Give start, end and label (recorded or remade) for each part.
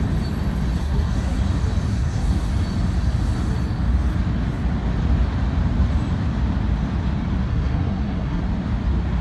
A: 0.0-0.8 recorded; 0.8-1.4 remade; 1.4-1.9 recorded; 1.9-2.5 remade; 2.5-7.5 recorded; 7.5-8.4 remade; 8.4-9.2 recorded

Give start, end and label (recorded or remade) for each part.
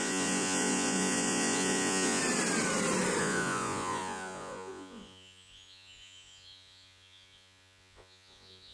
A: 0.0-2.2 remade; 2.2-3.2 recorded; 3.2-8.7 remade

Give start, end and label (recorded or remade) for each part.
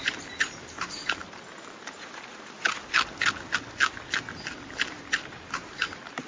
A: 0.0-1.2 remade; 1.2-5.0 recorded; 5.0-6.3 remade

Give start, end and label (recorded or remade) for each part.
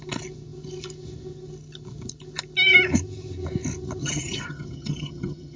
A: 0.0-4.0 recorded; 4.0-5.6 remade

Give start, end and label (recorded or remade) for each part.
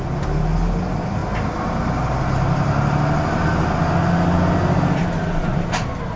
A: 0.0-6.2 recorded